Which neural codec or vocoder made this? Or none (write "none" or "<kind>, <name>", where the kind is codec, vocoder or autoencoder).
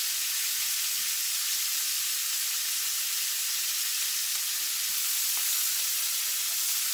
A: none